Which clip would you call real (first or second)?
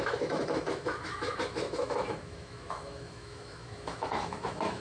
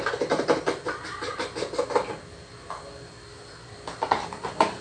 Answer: second